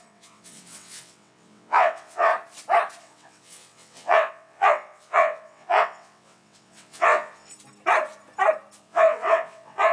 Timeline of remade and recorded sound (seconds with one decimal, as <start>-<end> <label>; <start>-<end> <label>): 0.0-2.3 remade; 2.3-3.0 recorded; 3.0-7.5 remade; 7.5-8.8 recorded; 8.8-9.9 remade